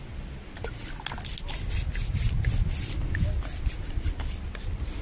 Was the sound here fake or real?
real